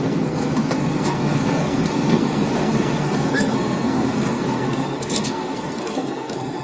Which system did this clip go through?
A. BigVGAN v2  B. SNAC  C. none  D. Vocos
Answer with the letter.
B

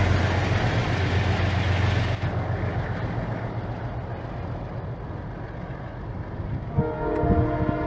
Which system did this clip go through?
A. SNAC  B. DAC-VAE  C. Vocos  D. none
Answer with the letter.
D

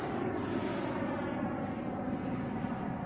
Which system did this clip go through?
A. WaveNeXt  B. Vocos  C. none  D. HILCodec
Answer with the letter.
C